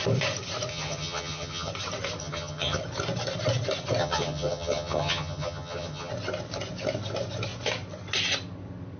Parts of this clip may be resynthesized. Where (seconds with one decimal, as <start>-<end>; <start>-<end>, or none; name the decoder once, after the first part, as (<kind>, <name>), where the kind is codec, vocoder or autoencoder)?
0.7-1.7 (vocoder, HiFi-GAN); 2.2-2.8; 4.0-6.1